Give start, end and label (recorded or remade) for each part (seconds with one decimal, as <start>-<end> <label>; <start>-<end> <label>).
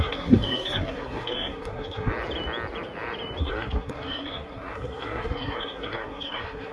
0.0-2.1 remade; 2.1-3.4 recorded; 3.4-6.7 remade